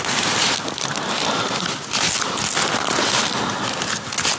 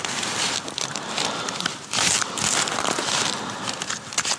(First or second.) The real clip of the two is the first